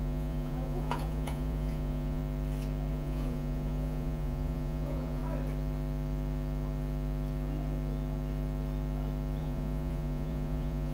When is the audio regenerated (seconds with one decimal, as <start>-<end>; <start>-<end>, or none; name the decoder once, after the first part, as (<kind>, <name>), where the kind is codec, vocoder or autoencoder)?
0.0-2.2 (vocoder, Vocos); 2.9-5.2; 9.4-10.9